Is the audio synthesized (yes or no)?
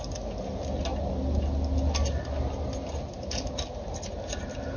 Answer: no